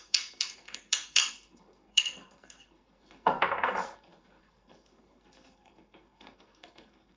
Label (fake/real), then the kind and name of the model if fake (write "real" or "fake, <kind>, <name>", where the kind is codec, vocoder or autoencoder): fake, codec, SNAC